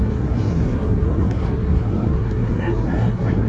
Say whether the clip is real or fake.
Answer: fake